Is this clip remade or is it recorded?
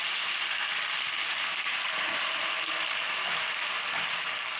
recorded